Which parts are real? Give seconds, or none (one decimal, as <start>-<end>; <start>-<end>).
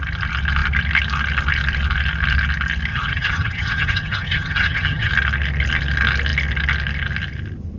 0.0-2.9; 5.1-7.8